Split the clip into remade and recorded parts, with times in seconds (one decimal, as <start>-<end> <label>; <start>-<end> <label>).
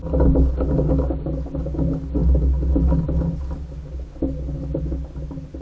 0.0-5.6 recorded